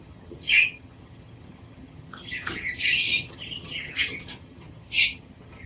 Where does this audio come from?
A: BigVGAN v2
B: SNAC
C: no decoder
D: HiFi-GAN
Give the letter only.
D